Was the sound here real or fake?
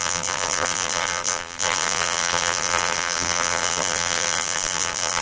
fake